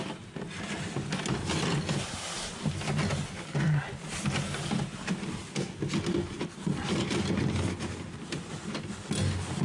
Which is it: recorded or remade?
recorded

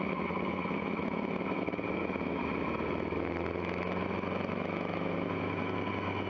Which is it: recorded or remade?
remade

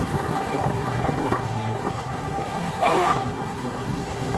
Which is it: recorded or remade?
remade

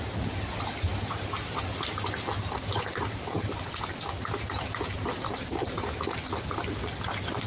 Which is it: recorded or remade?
recorded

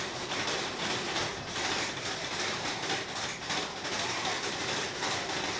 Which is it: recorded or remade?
recorded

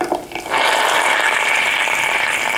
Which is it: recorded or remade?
remade